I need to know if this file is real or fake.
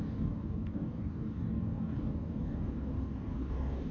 fake